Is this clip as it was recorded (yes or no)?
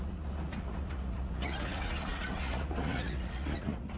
no